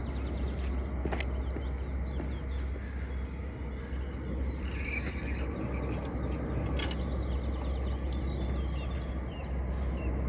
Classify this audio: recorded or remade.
recorded